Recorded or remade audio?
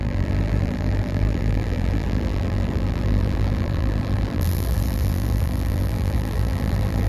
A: remade